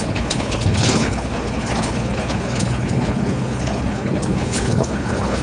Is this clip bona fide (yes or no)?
no